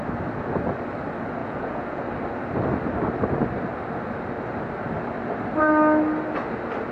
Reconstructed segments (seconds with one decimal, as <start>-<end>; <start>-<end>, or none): 1.4-2.0